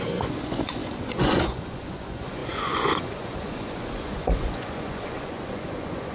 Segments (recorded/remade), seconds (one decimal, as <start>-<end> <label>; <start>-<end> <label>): 0.0-6.1 remade